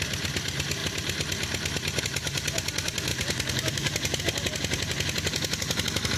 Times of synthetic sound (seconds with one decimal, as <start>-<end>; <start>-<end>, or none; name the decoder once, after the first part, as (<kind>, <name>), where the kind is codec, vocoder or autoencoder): 3.1-4.2 (vocoder, BigVGAN v2)